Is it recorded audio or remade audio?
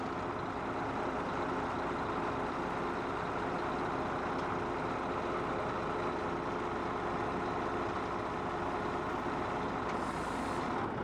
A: recorded